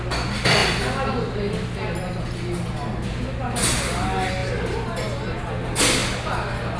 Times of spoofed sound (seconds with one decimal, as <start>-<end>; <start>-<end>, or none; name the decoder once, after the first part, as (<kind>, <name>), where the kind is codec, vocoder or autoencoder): none